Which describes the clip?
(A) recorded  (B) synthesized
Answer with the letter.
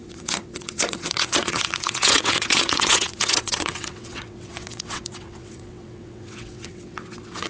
B